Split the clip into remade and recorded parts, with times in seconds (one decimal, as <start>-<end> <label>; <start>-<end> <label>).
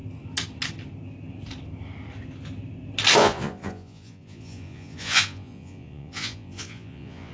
0.0-3.2 recorded; 3.2-7.3 remade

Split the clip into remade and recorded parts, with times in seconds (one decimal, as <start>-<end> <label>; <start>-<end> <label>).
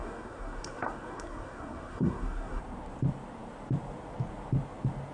0.0-2.6 remade; 2.6-5.1 recorded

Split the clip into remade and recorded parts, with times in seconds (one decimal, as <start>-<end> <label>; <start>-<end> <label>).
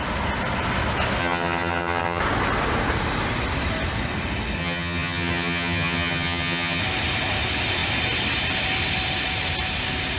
0.0-1.2 recorded; 1.2-2.2 remade; 2.2-4.6 recorded; 4.6-6.8 remade; 6.8-10.2 recorded